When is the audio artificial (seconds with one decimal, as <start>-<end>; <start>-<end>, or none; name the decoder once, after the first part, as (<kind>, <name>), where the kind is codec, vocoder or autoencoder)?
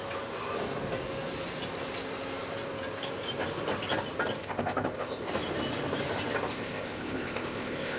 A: 4.4-5.3 (codec, ZipCodec); 6.5-8.0